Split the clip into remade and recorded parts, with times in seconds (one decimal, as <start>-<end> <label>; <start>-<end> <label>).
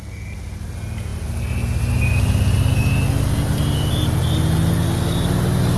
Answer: 0.0-5.8 recorded